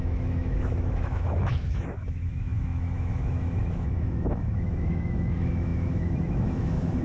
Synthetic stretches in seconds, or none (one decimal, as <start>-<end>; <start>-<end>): 0.0-7.0